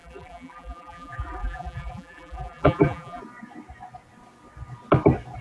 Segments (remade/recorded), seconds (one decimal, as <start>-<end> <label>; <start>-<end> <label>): 0.0-3.2 remade; 3.2-5.4 recorded